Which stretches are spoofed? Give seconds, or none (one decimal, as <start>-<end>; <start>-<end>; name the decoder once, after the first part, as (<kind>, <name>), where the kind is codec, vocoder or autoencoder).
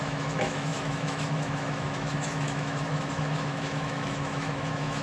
0.0-5.0 (autoencoder, DAC-VAE)